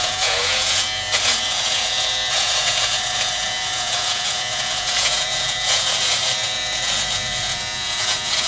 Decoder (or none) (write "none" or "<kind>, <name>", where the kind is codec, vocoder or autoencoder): vocoder, Vocos